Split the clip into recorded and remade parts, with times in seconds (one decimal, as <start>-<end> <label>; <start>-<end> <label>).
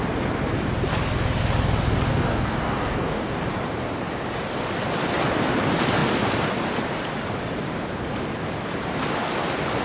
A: 0.0-2.1 recorded; 2.1-3.4 remade; 3.4-9.8 recorded